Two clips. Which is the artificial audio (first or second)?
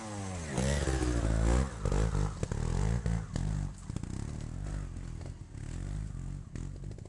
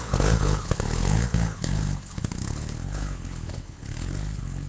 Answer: second